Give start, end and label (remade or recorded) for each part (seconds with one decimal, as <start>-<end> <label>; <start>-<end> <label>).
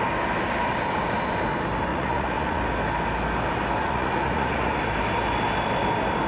0.0-1.9 recorded; 1.9-2.6 remade; 2.6-3.8 recorded; 3.8-4.8 remade; 4.8-6.3 recorded